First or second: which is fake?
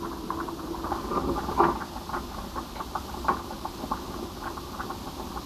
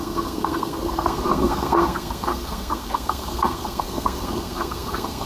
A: second